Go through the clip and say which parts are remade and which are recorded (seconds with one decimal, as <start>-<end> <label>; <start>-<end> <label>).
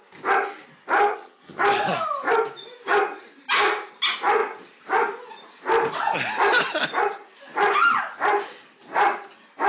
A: 0.0-1.1 recorded; 1.1-1.6 remade; 1.6-9.7 recorded